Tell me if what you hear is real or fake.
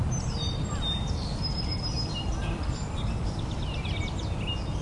real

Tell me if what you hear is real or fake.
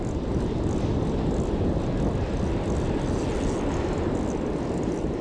real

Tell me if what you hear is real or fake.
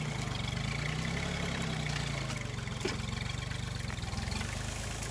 real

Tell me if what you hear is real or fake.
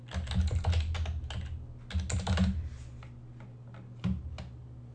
real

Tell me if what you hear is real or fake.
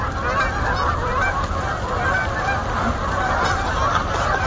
real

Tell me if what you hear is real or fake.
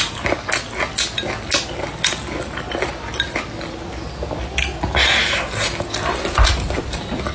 real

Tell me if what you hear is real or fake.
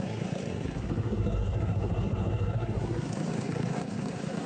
fake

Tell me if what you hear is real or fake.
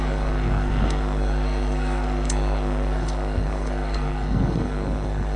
fake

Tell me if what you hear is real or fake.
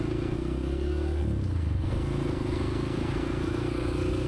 fake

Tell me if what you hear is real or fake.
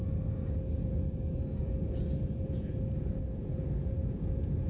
fake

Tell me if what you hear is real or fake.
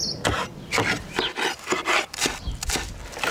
real